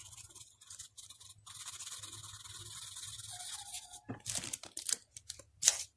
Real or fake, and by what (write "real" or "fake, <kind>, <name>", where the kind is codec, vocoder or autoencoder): real